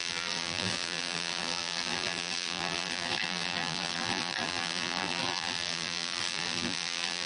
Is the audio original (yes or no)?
no